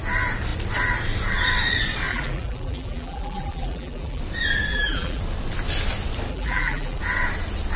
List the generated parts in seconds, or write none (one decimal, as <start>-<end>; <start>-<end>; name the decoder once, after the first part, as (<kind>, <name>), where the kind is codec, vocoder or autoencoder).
2.1-4.2 (vocoder, BigVGAN v2); 4.7-5.2; 6.3-7.0